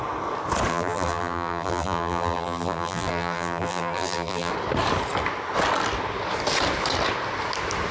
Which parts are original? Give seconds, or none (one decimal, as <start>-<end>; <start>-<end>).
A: 0.0-0.7; 4.5-7.9